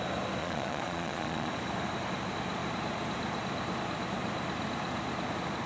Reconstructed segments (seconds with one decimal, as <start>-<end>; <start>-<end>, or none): 0.4-1.5